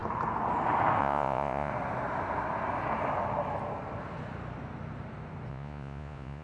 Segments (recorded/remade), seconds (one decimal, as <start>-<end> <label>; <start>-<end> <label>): 0.0-1.0 recorded; 1.0-1.7 remade; 1.7-5.5 recorded; 5.5-6.4 remade